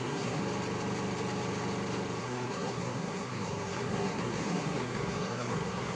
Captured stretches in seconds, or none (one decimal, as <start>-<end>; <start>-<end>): 0.4-2.2